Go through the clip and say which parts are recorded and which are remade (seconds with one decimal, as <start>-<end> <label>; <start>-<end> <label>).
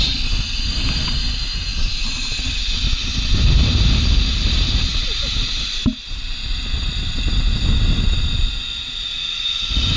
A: 0.0-10.0 recorded